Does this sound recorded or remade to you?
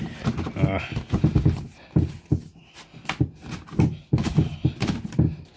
recorded